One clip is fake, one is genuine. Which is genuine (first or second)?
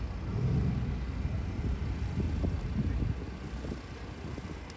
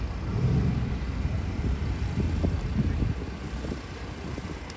first